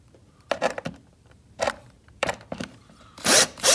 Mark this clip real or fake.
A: fake